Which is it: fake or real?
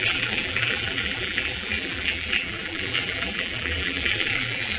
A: fake